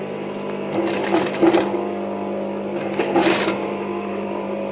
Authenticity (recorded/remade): remade